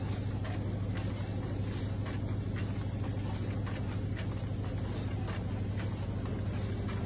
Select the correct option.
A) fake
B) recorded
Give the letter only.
B